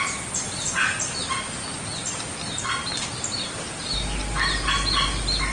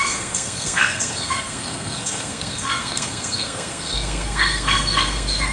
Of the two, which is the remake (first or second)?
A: second